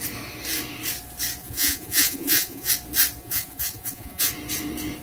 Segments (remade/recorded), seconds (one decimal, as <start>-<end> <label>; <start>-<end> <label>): 0.0-1.4 recorded; 1.4-2.7 remade; 2.7-3.2 recorded; 3.2-4.3 remade; 4.3-5.0 recorded

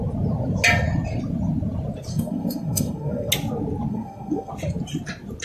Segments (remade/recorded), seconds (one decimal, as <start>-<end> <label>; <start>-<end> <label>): 0.0-2.1 recorded; 2.1-3.3 remade; 3.3-3.9 recorded; 3.9-4.5 remade; 4.5-5.4 recorded

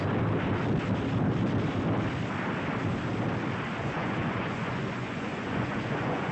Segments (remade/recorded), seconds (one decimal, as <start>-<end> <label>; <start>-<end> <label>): 0.0-3.8 recorded; 3.8-6.3 remade